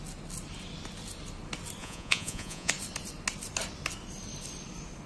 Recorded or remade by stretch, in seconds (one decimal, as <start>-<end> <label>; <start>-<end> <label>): 0.0-1.8 recorded; 1.8-2.7 remade; 2.7-5.1 recorded